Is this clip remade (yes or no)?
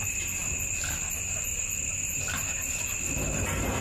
no